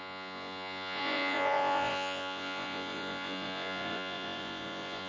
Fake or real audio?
fake